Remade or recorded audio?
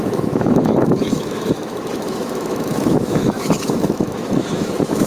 remade